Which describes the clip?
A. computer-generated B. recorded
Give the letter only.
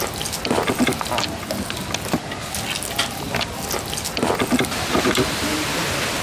B